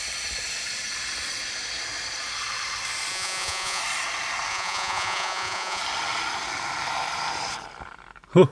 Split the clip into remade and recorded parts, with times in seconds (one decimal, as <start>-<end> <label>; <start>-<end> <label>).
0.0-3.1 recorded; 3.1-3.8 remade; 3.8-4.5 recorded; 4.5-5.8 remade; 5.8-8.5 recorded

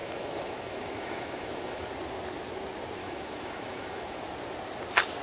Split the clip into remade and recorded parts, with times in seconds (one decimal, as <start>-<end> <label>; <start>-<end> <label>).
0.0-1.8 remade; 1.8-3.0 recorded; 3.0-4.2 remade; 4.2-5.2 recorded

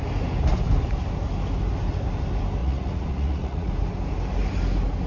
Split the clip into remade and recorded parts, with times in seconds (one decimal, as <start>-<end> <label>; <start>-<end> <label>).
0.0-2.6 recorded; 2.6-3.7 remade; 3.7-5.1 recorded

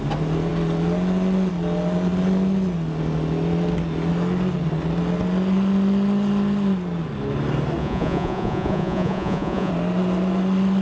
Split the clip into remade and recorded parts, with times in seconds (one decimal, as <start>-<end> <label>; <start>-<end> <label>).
0.0-7.8 recorded; 7.8-9.7 remade; 9.7-10.8 recorded

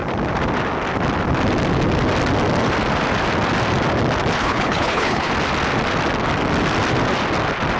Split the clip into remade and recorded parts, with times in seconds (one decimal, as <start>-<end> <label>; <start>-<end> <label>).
0.0-4.4 recorded; 4.4-5.3 remade; 5.3-7.8 recorded

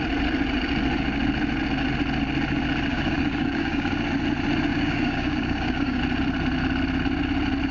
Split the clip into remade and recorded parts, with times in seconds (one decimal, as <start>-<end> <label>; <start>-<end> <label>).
0.0-2.9 recorded; 2.9-3.9 remade; 3.9-4.7 recorded; 4.7-6.0 remade; 6.0-7.7 recorded

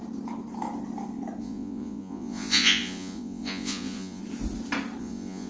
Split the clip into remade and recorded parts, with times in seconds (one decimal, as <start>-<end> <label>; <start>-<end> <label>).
0.0-1.4 recorded; 1.4-4.2 remade; 4.2-5.0 recorded; 5.0-5.5 remade

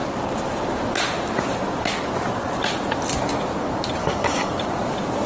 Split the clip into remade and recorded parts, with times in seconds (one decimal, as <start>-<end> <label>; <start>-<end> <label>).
0.0-4.0 recorded; 4.0-4.5 remade; 4.5-5.3 recorded